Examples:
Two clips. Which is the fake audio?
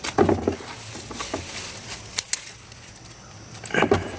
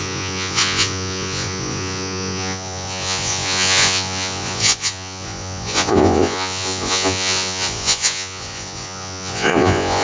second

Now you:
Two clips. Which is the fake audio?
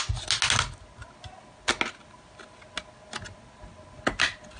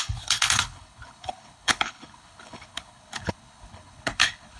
second